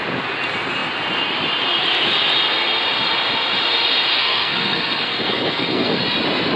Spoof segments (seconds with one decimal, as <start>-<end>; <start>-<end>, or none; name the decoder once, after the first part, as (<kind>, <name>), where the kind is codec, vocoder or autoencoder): 4.1-6.0 (codec, SNAC)

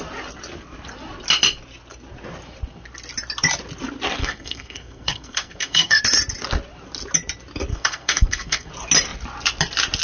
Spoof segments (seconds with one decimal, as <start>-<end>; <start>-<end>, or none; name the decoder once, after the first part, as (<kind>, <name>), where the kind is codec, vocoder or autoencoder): 4.2-6.0 (codec, SNAC); 7.7-8.7